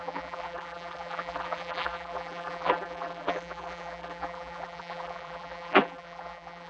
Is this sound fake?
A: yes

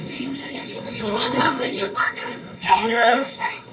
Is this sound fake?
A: yes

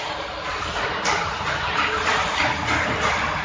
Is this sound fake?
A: no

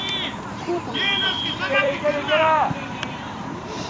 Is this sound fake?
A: yes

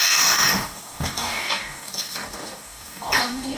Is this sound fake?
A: yes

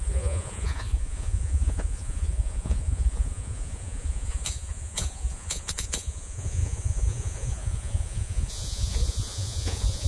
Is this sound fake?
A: yes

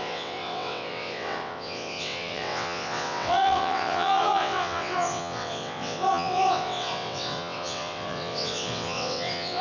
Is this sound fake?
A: yes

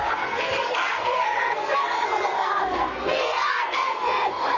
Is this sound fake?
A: yes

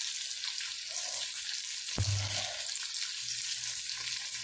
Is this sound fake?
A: no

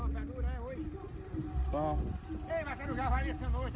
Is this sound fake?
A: no